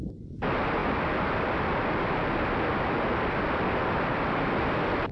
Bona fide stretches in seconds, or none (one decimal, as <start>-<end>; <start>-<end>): 0.0-5.1